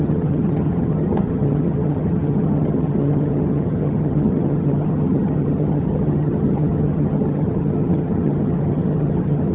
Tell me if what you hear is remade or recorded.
remade